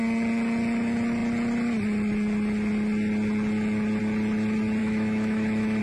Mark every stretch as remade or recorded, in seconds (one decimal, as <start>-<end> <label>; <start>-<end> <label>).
0.0-4.8 recorded; 4.8-5.8 remade